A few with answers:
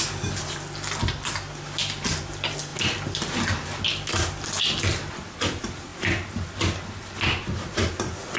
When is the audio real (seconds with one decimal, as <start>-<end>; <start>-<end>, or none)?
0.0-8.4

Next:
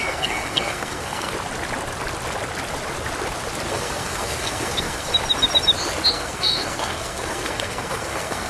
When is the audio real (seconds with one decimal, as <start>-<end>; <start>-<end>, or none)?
1.3-3.7; 5.1-6.1

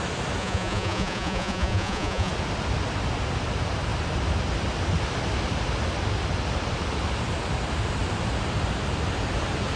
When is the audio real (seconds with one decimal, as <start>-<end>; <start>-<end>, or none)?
0.0-0.4; 2.3-9.8

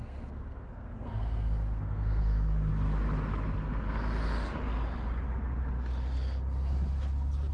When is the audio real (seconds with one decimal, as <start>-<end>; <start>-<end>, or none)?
2.7-7.5

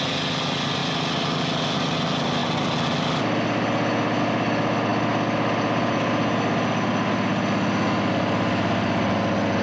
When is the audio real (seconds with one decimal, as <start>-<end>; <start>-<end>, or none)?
0.0-9.6